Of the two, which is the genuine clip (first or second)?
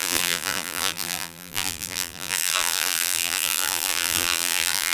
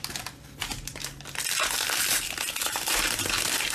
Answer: second